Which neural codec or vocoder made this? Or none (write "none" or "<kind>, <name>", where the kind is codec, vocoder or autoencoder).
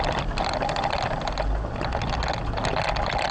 none